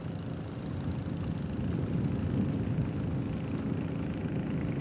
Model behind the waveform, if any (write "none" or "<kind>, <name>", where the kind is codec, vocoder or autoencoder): none